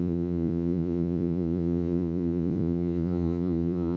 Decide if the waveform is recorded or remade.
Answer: remade